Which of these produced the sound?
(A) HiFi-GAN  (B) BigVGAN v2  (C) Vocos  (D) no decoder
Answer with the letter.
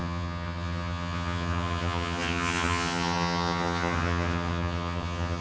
A